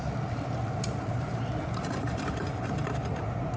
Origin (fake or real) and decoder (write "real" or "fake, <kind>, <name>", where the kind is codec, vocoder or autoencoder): fake, vocoder, BigVGAN v2